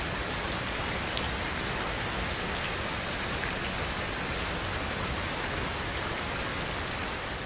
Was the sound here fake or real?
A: real